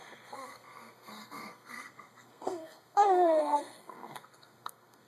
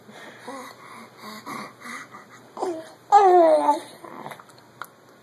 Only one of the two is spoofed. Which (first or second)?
first